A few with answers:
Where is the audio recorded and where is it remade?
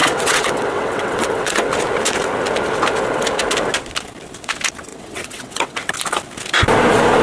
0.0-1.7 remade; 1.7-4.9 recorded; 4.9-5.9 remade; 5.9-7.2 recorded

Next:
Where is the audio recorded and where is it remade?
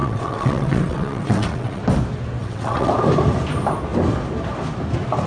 0.0-1.8 remade; 1.8-2.4 recorded; 2.4-2.9 remade; 2.9-5.3 recorded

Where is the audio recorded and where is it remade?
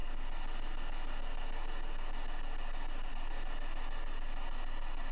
0.0-5.1 recorded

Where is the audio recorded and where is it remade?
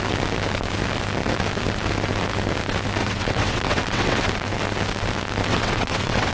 0.0-3.0 recorded; 3.0-4.3 remade; 4.3-5.5 recorded; 5.5-6.3 remade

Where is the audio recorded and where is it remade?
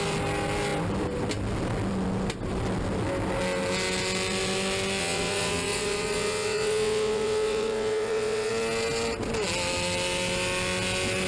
0.0-5.0 recorded; 5.0-8.5 remade; 8.5-11.3 recorded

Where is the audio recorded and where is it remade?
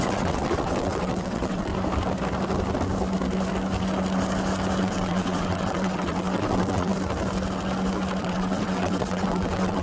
0.0-1.7 remade; 1.7-4.8 recorded; 4.8-6.9 remade; 6.9-8.2 recorded; 8.2-9.8 remade